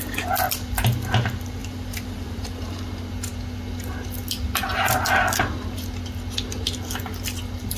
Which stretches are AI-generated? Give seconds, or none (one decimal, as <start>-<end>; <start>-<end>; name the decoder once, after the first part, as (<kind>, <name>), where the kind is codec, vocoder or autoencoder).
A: 1.6-2.8 (vocoder, BigVGAN v2)